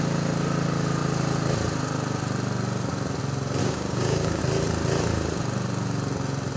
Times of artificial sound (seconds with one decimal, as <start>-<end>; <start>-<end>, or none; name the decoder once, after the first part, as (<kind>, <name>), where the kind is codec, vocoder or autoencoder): 3.6-4.4 (codec, DAC)